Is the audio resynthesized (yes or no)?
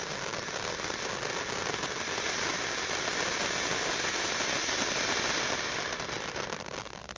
no